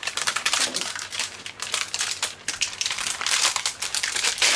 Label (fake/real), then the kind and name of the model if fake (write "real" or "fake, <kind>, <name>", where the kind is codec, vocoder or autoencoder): fake, vocoder, BigVGAN v2